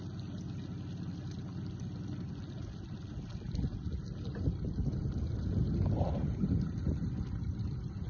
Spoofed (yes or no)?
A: no